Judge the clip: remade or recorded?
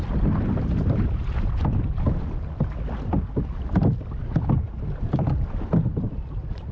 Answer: recorded